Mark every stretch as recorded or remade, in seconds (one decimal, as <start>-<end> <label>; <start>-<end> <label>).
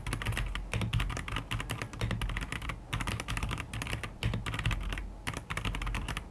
0.0-6.3 recorded